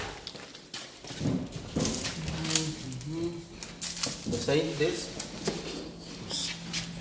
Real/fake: real